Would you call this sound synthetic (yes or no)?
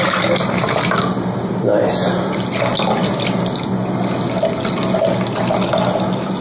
no